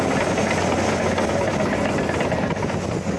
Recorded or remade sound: recorded